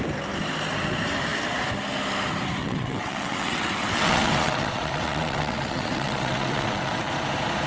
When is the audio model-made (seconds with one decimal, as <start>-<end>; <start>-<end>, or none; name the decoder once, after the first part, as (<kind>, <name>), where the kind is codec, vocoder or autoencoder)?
2.6-7.1 (vocoder, WaveNeXt)